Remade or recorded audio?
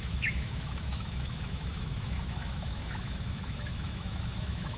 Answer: remade